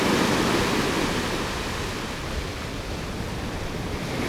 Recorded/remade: recorded